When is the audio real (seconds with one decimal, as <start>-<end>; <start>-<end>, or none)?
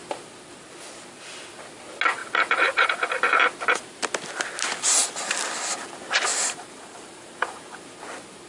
0.0-2.2; 2.9-6.3; 7.6-8.5